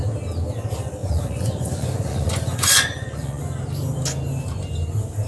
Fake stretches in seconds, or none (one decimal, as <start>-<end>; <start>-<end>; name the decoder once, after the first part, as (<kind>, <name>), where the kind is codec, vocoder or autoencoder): 1.0-3.4 (vocoder, Vocos)